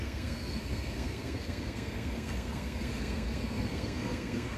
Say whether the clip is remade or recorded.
remade